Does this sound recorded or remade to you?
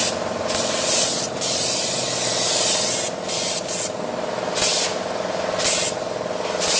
recorded